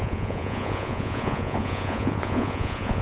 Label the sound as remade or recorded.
remade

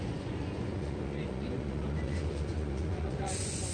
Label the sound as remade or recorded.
remade